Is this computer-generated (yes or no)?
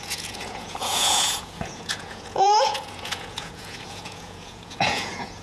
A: yes